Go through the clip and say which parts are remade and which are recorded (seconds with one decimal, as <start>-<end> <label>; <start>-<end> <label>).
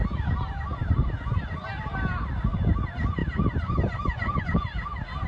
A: 0.0-5.3 recorded